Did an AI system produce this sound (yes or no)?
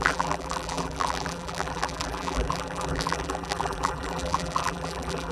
yes